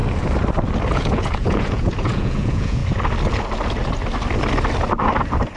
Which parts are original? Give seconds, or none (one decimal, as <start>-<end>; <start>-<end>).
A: 0.0-0.9; 2.8-5.6